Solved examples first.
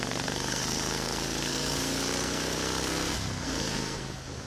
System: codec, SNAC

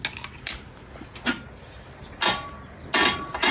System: none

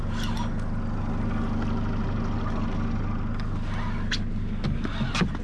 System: none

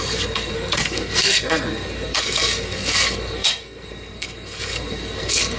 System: codec, SNAC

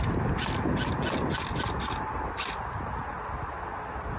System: none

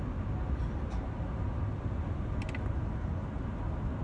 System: none